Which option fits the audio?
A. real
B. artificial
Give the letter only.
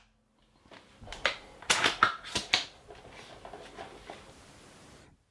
A